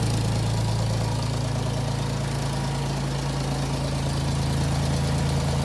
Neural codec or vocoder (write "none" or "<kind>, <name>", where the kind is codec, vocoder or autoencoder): none